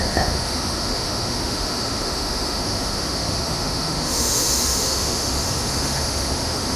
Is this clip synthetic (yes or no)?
yes